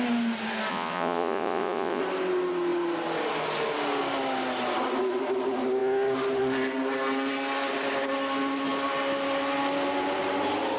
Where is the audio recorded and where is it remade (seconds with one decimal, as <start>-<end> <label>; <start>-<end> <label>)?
0.0-0.7 recorded; 0.7-2.0 remade; 2.0-10.8 recorded